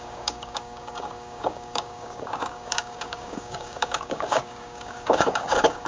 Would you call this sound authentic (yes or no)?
no